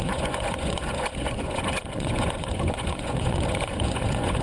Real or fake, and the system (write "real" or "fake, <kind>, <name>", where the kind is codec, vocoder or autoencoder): fake, vocoder, Vocos